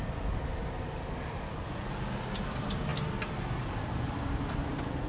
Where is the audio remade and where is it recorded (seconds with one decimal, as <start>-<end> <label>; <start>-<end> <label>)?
0.0-5.1 recorded